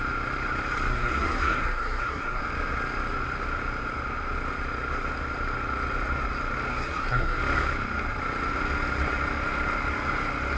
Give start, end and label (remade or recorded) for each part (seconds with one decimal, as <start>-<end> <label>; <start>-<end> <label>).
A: 0.0-0.9 recorded; 0.9-2.4 remade; 2.4-6.7 recorded; 6.7-7.4 remade; 7.4-10.6 recorded